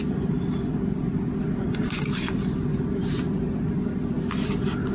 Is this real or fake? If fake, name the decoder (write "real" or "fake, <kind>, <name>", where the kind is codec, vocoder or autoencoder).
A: real